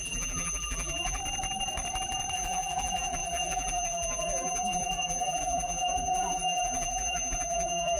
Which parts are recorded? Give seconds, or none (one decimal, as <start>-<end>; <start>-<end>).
1.2-2.3